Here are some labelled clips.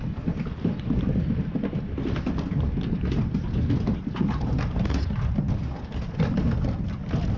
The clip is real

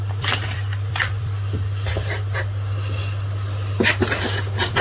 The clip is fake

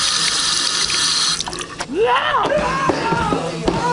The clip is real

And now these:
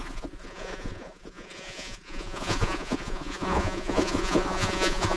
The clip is fake